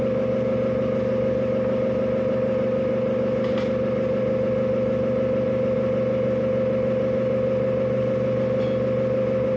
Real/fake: real